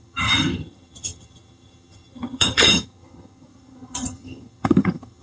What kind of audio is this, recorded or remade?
remade